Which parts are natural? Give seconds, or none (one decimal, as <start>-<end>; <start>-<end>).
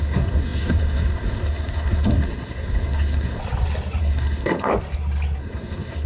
3.4-4.0; 4.7-5.4